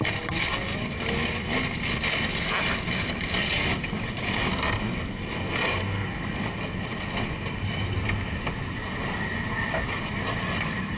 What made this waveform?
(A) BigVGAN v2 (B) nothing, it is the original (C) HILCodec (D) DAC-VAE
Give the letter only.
B